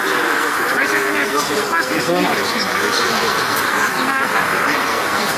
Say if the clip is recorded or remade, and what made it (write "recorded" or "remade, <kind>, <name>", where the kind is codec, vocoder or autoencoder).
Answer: remade, codec, SNAC